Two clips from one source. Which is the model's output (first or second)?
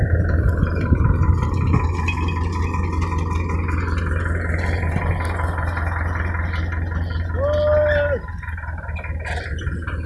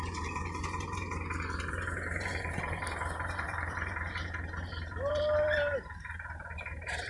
second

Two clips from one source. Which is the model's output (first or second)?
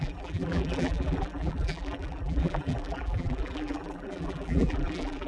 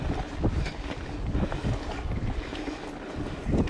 first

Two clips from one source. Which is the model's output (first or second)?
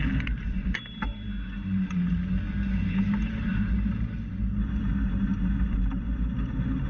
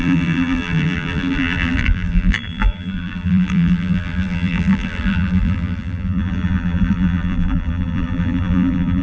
second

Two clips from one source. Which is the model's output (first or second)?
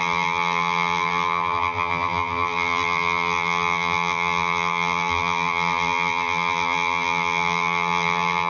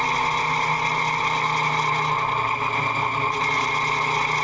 first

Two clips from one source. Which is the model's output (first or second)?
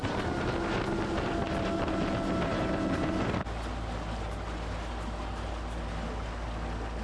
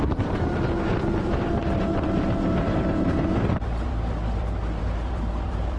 second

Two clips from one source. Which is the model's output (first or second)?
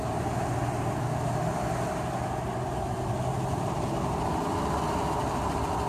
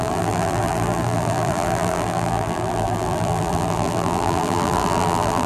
second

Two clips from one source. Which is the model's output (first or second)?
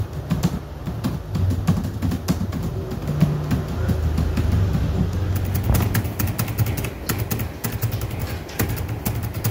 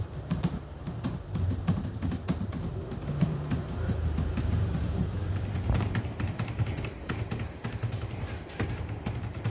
second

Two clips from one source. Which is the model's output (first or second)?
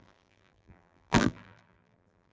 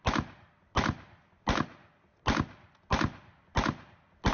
first